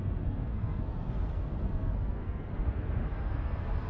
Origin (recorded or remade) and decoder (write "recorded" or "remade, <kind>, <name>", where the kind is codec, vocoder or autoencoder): remade, codec, SNAC